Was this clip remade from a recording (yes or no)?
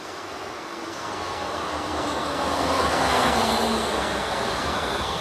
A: yes